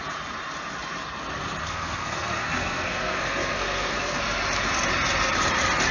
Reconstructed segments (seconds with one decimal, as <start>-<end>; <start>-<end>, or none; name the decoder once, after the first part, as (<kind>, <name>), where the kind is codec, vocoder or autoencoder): 1.6-4.2 (codec, SNAC)